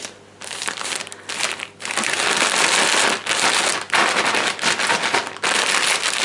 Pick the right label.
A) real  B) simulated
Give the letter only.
A